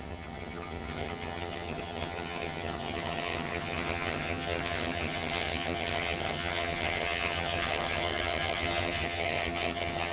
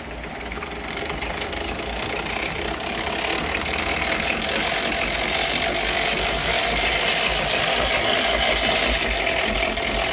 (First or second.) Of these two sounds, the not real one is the first